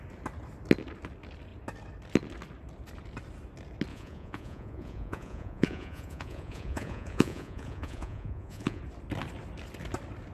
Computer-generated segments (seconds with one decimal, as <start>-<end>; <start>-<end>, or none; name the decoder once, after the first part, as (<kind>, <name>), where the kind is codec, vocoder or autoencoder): 3.9-8.8 (vocoder, Vocos)